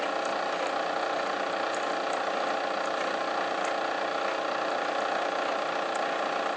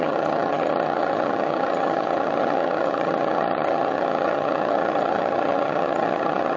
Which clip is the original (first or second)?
first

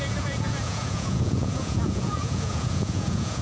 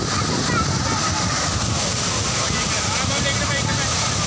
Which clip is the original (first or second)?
second